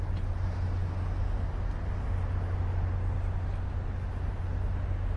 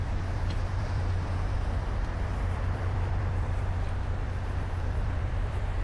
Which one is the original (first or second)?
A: first